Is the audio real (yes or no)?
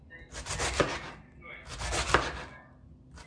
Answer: yes